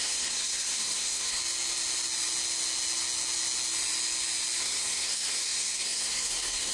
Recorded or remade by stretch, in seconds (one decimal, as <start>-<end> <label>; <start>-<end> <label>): 0.0-1.4 remade; 1.4-4.6 recorded; 4.6-6.7 remade